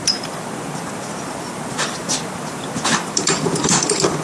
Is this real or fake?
fake